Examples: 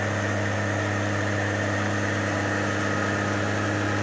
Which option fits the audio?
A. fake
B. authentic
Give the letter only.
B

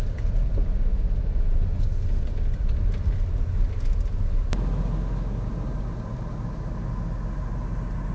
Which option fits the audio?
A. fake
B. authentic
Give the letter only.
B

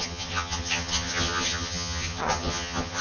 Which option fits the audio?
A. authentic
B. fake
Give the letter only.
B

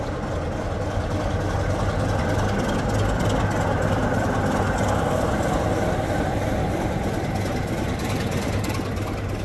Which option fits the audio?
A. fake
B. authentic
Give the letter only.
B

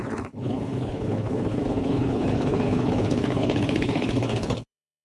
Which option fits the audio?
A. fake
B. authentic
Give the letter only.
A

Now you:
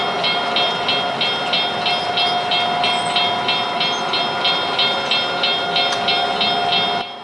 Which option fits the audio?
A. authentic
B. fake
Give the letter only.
A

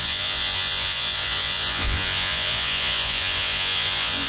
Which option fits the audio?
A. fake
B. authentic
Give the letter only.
A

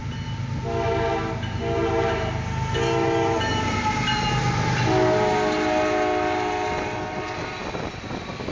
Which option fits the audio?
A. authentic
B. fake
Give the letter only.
A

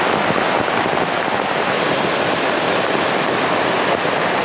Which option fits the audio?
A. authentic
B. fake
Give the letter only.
A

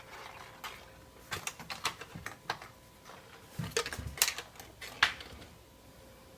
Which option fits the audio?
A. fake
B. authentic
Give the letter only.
B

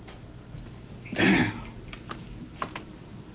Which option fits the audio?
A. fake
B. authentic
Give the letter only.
B